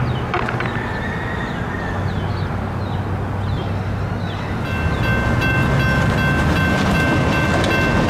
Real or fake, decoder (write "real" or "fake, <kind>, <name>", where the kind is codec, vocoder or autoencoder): real